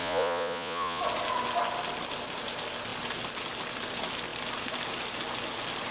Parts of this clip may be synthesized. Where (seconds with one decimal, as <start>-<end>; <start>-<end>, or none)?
0.0-1.0

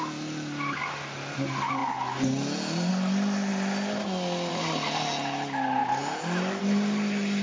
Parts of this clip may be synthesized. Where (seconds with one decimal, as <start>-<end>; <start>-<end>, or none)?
none

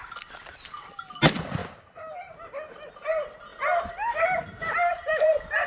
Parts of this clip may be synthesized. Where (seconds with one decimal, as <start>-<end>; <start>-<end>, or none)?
3.5-5.3